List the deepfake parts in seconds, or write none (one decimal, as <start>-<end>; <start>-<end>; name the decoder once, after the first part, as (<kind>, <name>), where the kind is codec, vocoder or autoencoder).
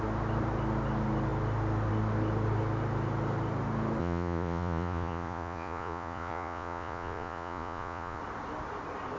4.0-8.2 (vocoder, Vocos)